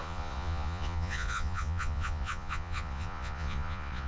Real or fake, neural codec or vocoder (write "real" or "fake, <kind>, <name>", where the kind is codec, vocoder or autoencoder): fake, vocoder, Vocos